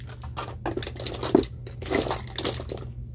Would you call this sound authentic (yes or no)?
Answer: yes